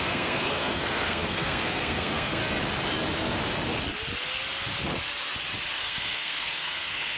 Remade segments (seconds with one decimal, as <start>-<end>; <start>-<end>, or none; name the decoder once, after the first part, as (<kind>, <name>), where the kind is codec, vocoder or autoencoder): 0.0-2.4 (codec, SNAC); 5.7-7.2